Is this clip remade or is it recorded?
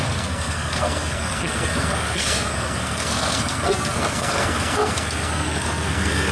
remade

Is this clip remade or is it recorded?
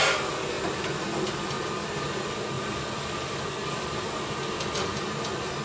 recorded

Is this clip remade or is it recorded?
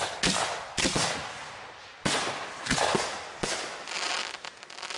recorded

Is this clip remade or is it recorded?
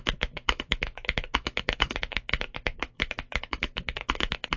remade